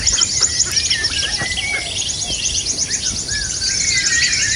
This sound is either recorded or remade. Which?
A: recorded